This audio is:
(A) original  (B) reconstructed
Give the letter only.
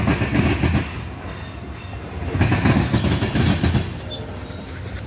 A